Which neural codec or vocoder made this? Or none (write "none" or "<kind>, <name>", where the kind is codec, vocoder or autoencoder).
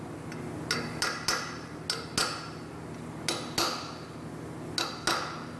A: none